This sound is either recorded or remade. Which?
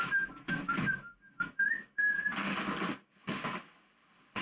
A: recorded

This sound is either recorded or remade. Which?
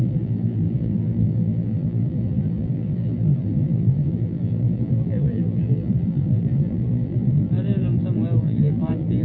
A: remade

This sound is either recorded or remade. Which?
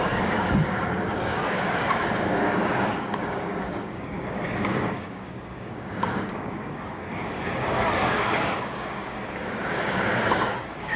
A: remade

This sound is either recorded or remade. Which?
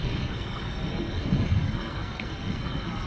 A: remade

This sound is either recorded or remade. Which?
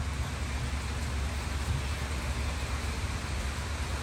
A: recorded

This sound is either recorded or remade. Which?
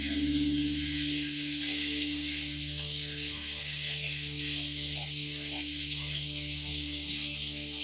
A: remade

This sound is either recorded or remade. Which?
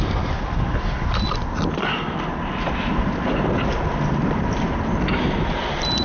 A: recorded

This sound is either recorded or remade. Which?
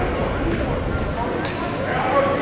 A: recorded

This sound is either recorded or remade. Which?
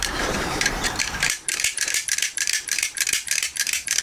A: remade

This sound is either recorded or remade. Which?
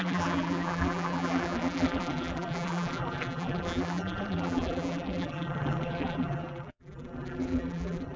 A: remade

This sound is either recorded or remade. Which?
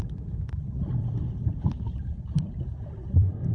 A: remade